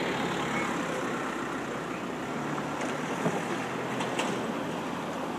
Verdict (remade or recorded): recorded